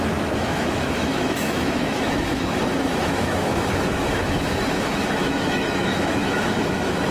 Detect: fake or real fake